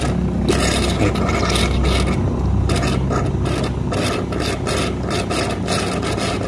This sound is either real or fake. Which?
real